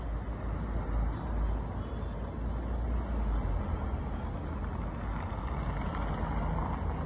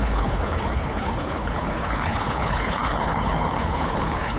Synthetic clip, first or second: second